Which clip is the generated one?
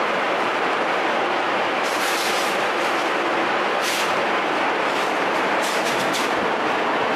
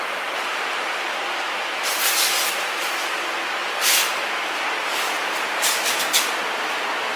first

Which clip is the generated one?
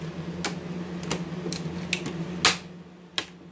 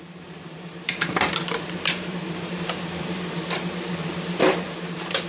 second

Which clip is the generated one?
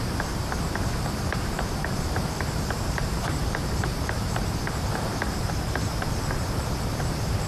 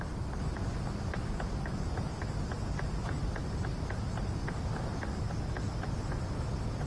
first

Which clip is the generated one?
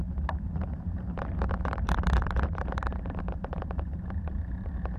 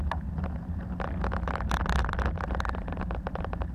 first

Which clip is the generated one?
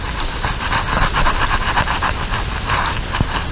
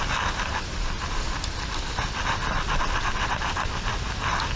first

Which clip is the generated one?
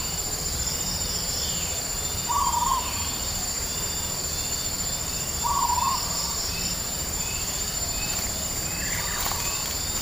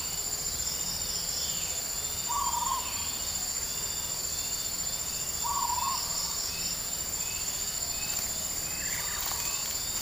first